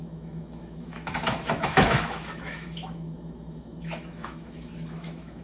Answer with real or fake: fake